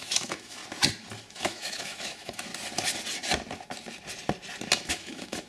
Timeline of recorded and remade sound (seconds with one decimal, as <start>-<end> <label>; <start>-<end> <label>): 0.0-0.6 remade; 0.6-1.3 recorded; 1.3-2.5 remade; 2.5-4.9 recorded; 4.9-5.5 remade